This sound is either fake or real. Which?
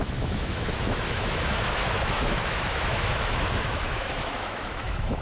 fake